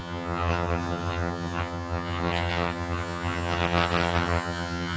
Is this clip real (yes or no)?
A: no